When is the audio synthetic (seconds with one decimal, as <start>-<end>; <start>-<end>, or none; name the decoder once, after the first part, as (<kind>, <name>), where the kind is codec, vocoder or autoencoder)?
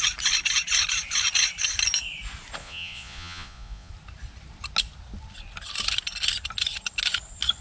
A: 2.6-3.9 (vocoder, Vocos)